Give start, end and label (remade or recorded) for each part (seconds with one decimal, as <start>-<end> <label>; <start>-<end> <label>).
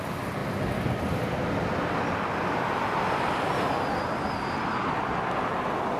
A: 0.0-6.0 recorded